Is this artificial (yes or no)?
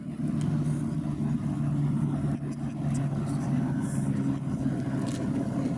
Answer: no